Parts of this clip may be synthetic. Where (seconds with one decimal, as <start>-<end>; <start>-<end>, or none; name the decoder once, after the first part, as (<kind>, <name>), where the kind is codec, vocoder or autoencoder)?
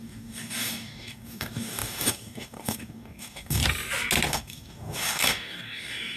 0.0-3.6 (codec, DAC); 4.3-6.2